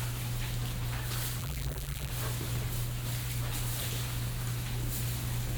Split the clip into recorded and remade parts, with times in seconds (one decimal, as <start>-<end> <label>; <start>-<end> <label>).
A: 0.0-1.4 recorded; 1.4-2.1 remade; 2.1-5.6 recorded